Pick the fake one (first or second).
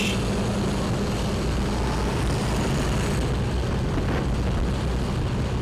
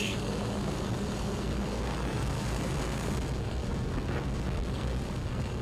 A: second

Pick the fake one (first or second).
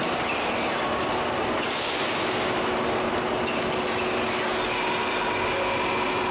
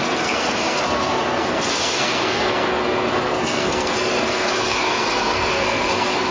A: second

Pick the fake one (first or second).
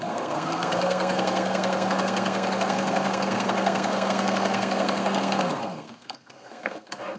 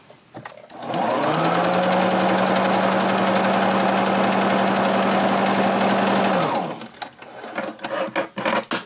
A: first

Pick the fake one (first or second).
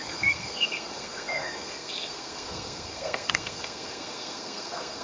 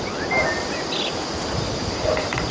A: first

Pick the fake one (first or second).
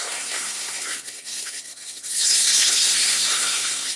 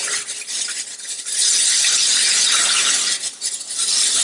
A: first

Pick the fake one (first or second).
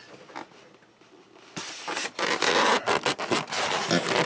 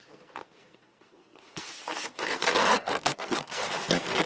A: second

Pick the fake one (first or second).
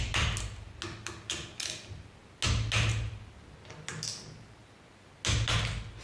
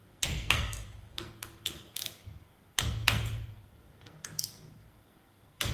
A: second